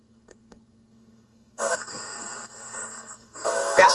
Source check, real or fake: fake